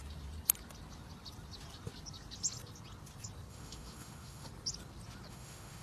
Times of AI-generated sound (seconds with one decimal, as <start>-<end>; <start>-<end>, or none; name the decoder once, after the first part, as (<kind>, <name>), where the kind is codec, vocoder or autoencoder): 3.5-4.5 (autoencoder, DAC-VAE); 5.3-5.8